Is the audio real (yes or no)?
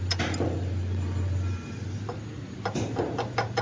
yes